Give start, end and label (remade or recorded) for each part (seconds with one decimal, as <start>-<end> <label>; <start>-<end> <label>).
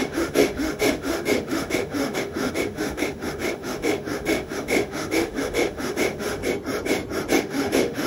0.0-6.4 remade; 6.4-7.4 recorded; 7.4-8.1 remade